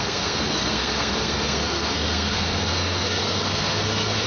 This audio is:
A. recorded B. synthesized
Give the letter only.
B